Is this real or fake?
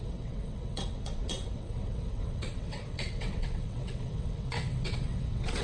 fake